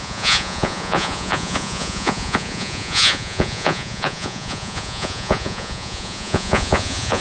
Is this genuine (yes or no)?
no